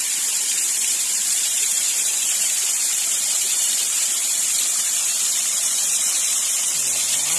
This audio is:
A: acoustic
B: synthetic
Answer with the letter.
B